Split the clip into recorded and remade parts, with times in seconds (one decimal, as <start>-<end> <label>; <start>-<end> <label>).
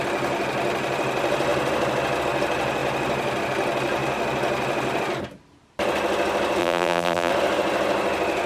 0.0-6.6 recorded; 6.6-7.3 remade; 7.3-8.5 recorded